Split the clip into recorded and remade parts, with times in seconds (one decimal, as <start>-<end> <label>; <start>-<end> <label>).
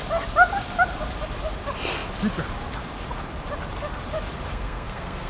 0.0-4.5 recorded; 4.5-5.3 remade